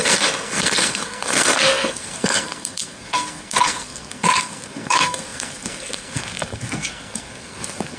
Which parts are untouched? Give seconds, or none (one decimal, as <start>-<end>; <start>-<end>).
none